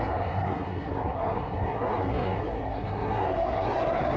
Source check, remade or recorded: remade